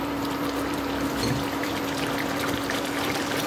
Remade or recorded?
remade